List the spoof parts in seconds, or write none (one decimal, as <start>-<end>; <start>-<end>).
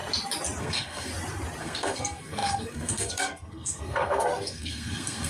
0.6-1.1; 1.6-5.3